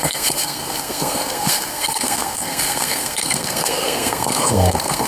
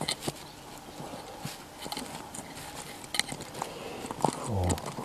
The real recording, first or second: second